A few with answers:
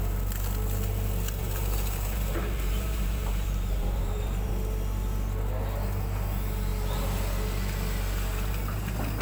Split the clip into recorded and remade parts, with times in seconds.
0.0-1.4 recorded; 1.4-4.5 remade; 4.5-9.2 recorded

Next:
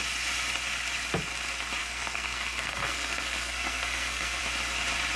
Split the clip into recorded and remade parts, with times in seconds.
0.0-1.8 recorded; 1.8-4.4 remade; 4.4-5.2 recorded